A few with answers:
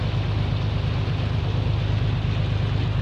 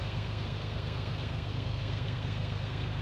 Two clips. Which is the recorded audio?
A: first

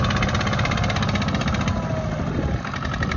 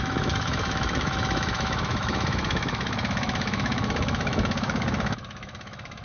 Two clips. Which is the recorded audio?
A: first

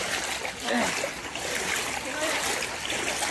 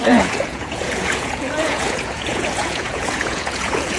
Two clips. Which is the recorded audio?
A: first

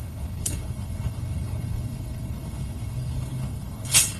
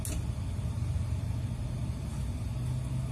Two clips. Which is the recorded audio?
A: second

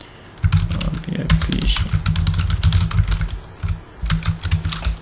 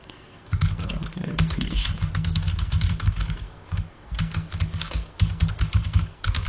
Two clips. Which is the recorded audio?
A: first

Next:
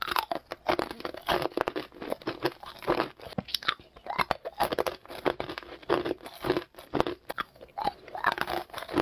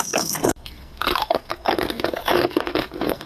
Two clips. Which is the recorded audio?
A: first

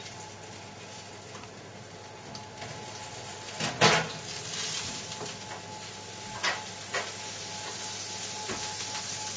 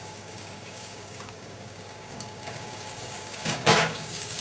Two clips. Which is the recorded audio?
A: first